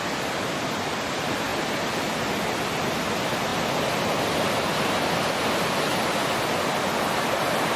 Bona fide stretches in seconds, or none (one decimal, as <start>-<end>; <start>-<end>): 0.0-7.8